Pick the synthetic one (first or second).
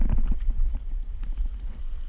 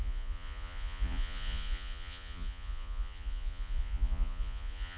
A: second